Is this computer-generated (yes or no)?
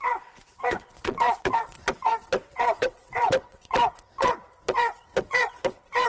yes